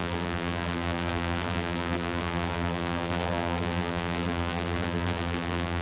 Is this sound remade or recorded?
remade